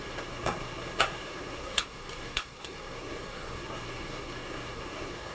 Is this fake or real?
fake